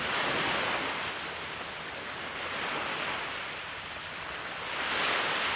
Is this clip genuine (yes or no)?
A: yes